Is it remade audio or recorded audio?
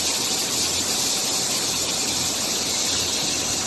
recorded